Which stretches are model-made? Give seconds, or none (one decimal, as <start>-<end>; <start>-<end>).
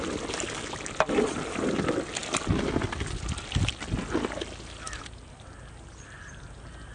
none